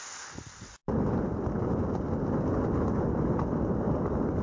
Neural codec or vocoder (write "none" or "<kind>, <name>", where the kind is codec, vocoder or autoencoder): none